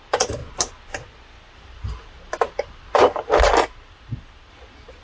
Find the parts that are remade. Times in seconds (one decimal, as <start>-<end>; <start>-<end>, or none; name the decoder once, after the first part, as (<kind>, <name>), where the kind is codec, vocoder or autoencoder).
none

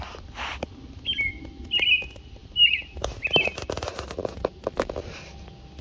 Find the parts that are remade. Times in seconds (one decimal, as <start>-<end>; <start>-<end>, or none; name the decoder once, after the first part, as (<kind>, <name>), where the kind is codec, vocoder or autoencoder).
none

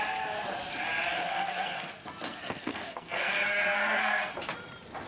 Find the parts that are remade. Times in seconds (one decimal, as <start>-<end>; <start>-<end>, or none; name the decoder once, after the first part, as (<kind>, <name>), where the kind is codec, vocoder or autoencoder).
1.2-4.3 (codec, SNAC)